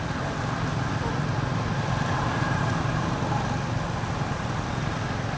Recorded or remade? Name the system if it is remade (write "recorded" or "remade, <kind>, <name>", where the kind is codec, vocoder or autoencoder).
recorded